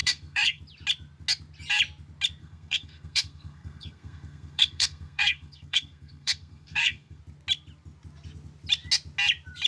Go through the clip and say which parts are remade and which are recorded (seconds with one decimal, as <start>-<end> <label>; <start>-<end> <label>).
0.0-0.6 remade; 0.6-2.4 recorded; 2.4-7.2 remade; 7.2-9.7 recorded